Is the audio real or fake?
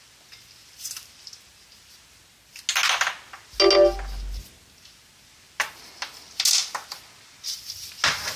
real